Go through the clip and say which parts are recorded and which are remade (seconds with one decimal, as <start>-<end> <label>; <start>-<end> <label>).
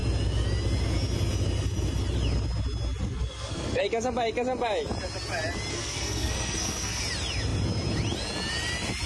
0.0-3.1 recorded; 3.1-3.8 remade; 3.8-5.7 recorded; 5.7-7.0 remade; 7.0-9.1 recorded